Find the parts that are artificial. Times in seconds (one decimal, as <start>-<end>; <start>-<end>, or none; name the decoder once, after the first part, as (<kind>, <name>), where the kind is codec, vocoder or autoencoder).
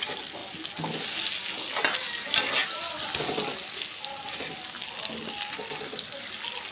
none